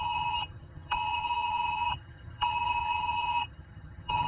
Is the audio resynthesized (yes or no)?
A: yes